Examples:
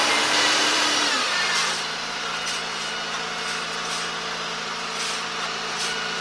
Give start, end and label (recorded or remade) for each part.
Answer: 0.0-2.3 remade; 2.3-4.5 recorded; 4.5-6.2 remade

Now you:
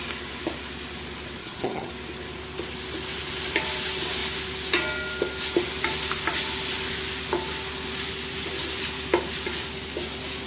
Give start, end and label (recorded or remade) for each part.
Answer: 0.0-1.4 recorded; 1.4-1.9 remade; 1.9-10.5 recorded

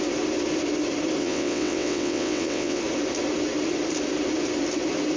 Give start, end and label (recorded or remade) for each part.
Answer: 0.0-1.2 recorded; 1.2-2.8 remade; 2.8-5.2 recorded